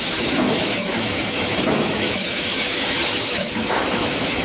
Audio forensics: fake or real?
fake